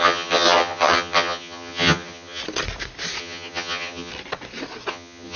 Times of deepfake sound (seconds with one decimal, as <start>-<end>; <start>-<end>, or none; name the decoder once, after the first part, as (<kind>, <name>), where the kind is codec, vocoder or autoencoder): 0.0-2.4 (vocoder, HiFi-GAN); 3.2-4.1; 4.9-5.4